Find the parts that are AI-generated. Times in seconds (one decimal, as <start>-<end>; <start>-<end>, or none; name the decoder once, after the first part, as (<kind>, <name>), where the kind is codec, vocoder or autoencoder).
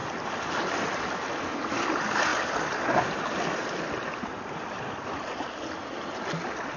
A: none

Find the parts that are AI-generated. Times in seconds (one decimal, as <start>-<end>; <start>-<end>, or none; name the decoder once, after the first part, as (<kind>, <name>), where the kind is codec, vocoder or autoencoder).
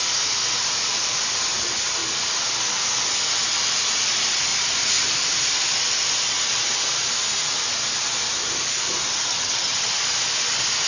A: 9.3-10.0 (vocoder, HiFi-GAN)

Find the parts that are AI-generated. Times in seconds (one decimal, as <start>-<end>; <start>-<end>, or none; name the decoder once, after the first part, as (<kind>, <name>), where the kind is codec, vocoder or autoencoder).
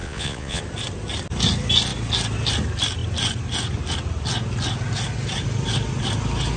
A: 0.0-0.6 (vocoder, Vocos)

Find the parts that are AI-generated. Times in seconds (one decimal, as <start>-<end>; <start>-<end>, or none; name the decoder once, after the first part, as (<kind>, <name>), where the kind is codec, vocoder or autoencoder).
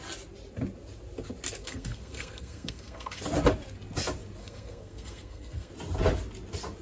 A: 1.6-3.2 (codec, SNAC); 4.4-5.7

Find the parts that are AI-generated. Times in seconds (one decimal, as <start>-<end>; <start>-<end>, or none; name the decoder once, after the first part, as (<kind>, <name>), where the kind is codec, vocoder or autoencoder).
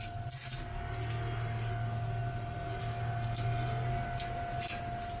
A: 2.2-2.8 (vocoder, BigVGAN v2)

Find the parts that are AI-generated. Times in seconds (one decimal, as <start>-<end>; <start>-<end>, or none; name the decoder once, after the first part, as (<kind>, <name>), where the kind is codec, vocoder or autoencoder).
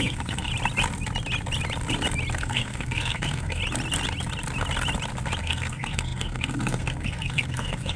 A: 0.0-0.5 (codec, SNAC); 2.4-3.6; 5.4-8.0